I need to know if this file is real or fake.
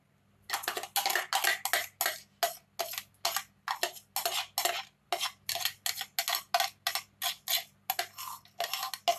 real